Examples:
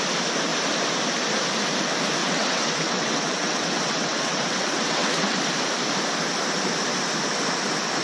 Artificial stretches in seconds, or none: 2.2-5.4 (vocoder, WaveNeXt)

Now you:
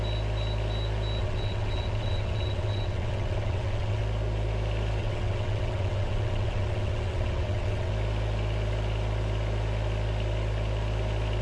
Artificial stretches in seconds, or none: 1.2-4.0 (vocoder, WaveNeXt); 5.0-7.9

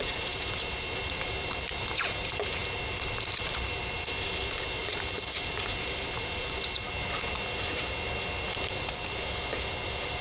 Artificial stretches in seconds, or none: none

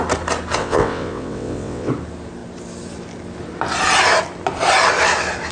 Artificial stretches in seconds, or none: 0.6-1.9 (vocoder, WaveNeXt)

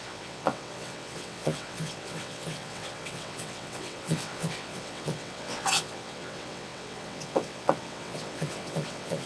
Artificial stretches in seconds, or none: 0.0-9.3 (vocoder, WaveNeXt)